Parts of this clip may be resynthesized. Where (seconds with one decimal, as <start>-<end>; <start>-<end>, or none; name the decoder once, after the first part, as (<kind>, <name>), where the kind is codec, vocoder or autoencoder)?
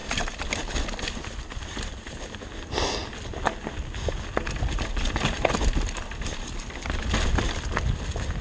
none